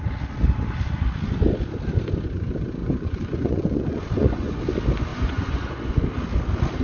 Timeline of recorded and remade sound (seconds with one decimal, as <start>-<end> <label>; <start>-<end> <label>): 0.0-2.8 recorded; 2.8-4.6 remade; 4.6-5.1 recorded; 5.1-6.0 remade; 6.0-6.8 recorded